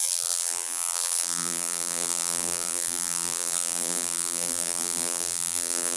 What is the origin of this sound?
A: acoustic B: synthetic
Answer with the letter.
B